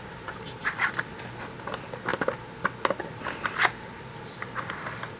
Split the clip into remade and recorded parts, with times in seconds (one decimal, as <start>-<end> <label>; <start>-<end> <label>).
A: 0.0-2.1 remade; 2.1-4.0 recorded; 4.0-5.2 remade